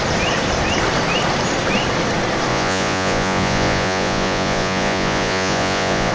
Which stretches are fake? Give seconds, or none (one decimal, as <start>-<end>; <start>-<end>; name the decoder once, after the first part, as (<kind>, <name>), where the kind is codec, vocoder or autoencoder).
2.5-6.1 (vocoder, Vocos)